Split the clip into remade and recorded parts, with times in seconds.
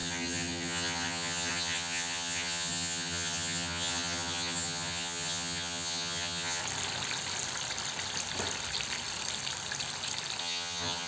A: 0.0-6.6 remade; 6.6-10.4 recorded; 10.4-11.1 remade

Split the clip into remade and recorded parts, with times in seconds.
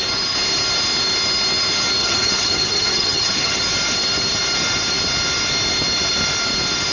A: 0.0-2.0 recorded; 2.0-3.6 remade; 3.6-6.9 recorded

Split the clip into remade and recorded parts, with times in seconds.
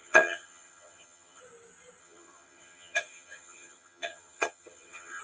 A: 0.0-1.4 remade; 1.4-2.0 recorded; 2.0-5.2 remade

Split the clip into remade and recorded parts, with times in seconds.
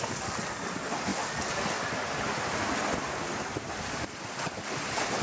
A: 0.0-5.2 recorded